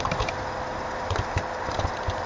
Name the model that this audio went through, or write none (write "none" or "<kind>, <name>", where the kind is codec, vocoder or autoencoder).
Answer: none